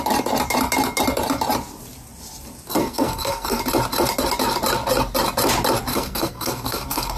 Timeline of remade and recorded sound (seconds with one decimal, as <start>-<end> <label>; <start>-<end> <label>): 0.0-2.8 recorded; 2.8-3.6 remade; 3.6-5.9 recorded; 5.9-7.2 remade